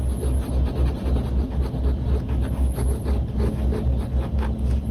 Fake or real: real